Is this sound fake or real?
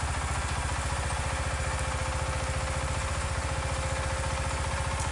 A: real